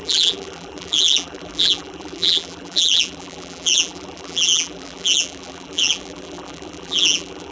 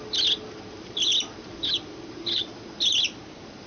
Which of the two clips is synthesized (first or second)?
first